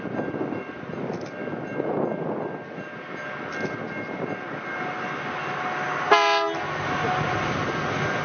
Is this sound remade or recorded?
recorded